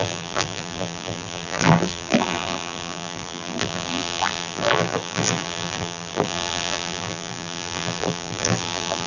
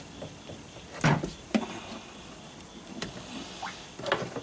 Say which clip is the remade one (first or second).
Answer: first